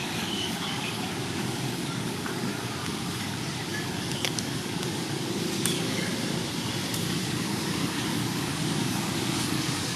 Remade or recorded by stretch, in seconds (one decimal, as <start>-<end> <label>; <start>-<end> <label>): 0.0-6.1 remade; 6.1-7.0 recorded; 7.0-10.0 remade